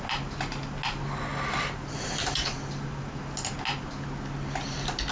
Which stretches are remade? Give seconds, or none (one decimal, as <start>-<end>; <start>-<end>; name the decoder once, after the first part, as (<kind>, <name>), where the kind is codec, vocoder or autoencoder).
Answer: 1.3-2.3 (vocoder, BigVGAN v2)